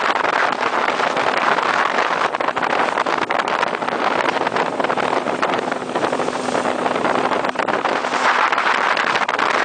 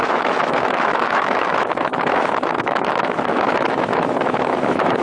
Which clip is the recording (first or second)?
first